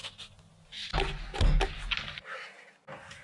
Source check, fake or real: real